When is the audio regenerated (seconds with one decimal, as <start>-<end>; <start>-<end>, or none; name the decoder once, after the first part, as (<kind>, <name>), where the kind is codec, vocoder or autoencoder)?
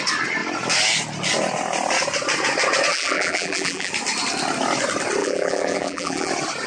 2.9-3.9 (vocoder, BigVGAN v2); 5.2-6.3